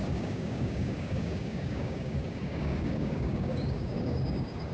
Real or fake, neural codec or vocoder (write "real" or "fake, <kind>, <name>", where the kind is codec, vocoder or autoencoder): fake, codec, DAC